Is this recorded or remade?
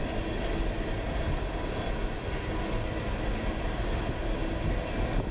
recorded